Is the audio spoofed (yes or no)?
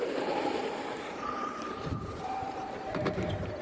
yes